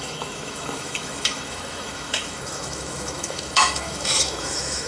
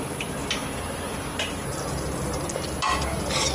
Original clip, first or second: second